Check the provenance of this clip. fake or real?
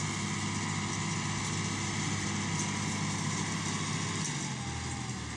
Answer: real